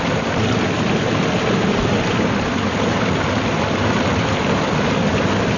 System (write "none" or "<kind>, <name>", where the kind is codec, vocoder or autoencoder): none